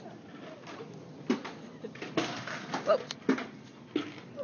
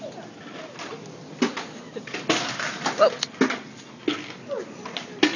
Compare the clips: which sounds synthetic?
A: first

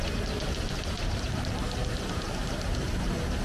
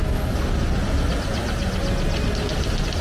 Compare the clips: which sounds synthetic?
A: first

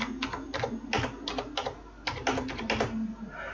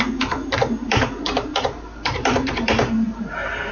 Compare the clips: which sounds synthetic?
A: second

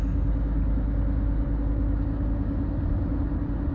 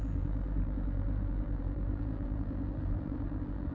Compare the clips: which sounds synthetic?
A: second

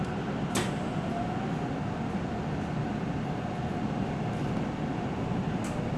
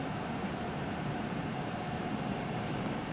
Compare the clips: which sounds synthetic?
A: second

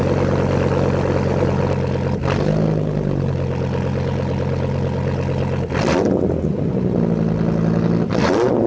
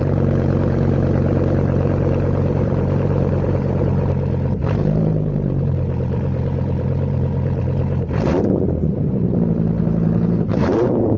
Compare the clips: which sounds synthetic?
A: second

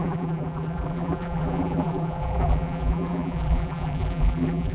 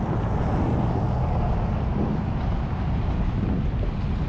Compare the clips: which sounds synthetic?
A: first